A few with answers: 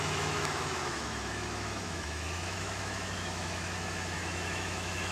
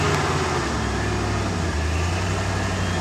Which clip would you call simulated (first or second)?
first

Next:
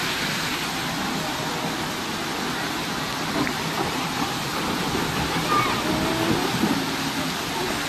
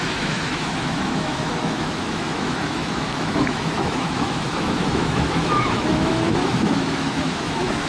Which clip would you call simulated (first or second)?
second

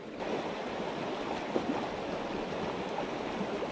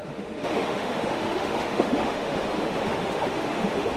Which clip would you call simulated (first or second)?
second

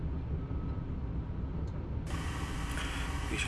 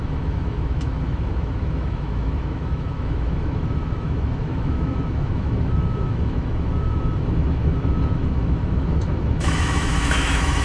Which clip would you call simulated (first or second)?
second